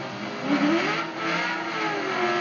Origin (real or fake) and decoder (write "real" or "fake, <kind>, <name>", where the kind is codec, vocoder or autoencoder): real